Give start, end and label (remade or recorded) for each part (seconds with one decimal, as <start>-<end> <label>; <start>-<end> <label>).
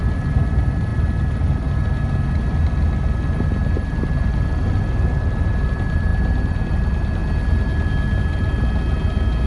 0.0-0.9 remade; 0.9-5.5 recorded; 5.5-7.2 remade; 7.2-9.5 recorded